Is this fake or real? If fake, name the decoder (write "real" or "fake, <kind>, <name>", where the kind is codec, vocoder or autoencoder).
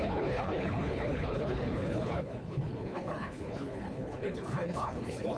fake, codec, HILCodec